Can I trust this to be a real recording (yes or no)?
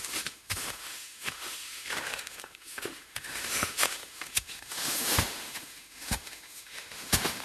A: no